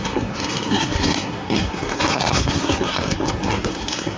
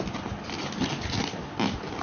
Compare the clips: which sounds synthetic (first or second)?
first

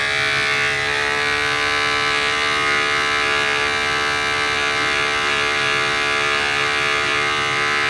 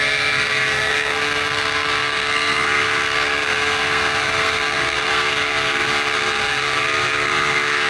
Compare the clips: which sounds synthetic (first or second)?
second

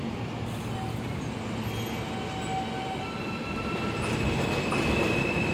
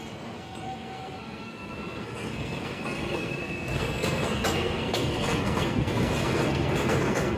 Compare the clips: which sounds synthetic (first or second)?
second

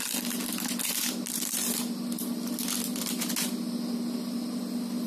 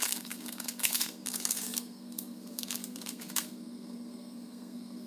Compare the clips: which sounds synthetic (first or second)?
second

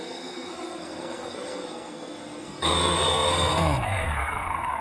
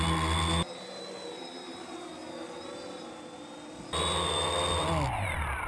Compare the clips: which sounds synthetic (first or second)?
first